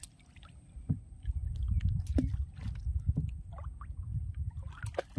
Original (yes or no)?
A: yes